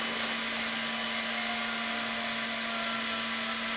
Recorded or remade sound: recorded